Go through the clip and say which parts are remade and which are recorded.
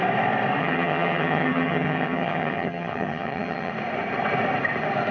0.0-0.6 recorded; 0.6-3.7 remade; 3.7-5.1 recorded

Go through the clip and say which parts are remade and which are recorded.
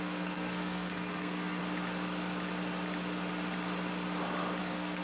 0.0-1.6 remade; 1.6-4.6 recorded; 4.6-5.0 remade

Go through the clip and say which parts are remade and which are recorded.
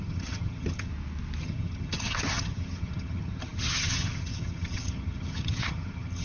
0.0-0.9 remade; 0.9-1.4 recorded; 1.4-6.2 remade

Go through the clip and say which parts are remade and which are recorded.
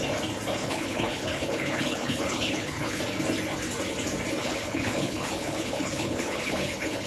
0.0-0.6 recorded; 0.6-3.0 remade; 3.0-4.4 recorded; 4.4-7.1 remade